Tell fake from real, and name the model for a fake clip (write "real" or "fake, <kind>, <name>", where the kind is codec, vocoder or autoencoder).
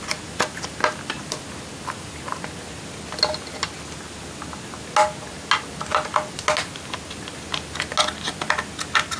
real